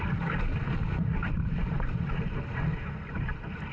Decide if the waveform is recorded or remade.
recorded